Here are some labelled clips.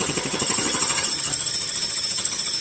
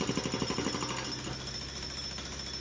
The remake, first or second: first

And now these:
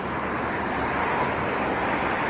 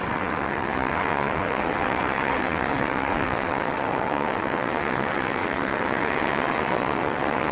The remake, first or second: second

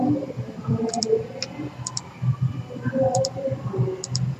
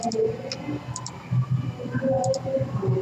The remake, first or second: first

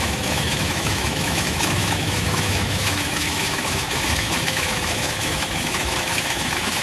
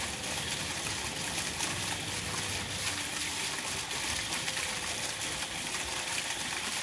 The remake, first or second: first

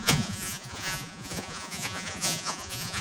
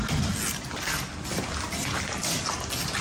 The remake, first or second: first